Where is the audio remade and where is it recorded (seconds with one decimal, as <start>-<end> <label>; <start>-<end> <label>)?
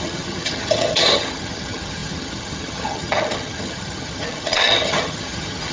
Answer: 0.0-5.7 remade